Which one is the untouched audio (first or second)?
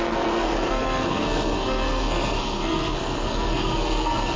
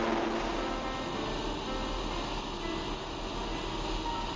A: second